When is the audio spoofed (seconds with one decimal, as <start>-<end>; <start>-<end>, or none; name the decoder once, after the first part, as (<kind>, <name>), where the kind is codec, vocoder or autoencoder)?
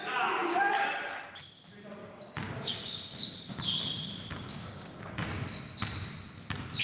2.0-3.5 (codec, DAC); 4.3-5.4